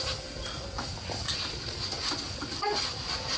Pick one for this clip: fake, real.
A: real